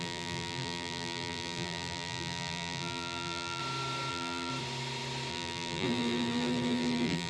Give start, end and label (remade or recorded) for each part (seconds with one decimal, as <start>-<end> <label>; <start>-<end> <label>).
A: 0.0-3.6 remade; 3.6-4.1 recorded; 4.1-4.5 remade; 4.5-5.3 recorded; 5.3-7.3 remade